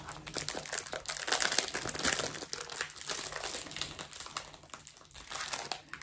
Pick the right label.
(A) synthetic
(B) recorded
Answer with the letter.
B